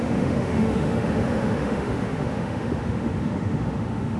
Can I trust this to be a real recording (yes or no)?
no